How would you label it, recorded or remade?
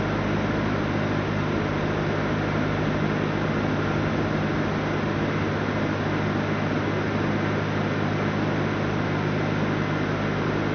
recorded